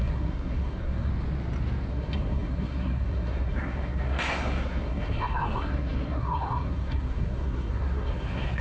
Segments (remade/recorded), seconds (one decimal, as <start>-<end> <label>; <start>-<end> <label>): 0.0-1.1 remade; 1.1-1.9 recorded; 1.9-8.6 remade